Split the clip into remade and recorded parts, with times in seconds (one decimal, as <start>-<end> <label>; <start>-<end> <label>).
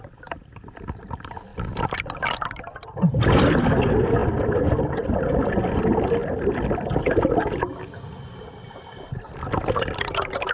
0.0-4.2 recorded; 4.2-4.9 remade; 4.9-6.2 recorded; 6.2-6.9 remade; 6.9-10.5 recorded